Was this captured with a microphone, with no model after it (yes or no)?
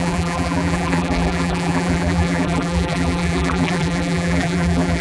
no